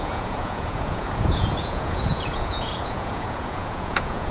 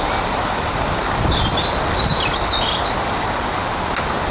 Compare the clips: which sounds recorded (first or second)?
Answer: second